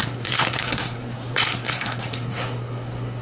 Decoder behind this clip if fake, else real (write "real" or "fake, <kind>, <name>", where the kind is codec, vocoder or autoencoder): fake, codec, SNAC